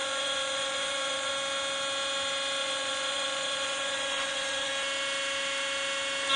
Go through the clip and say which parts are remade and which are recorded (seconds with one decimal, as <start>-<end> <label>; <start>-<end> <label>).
0.0-1.3 remade; 1.3-2.6 recorded; 2.6-4.7 remade; 4.7-6.4 recorded